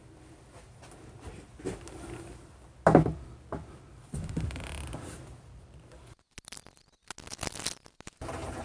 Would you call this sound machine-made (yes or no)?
no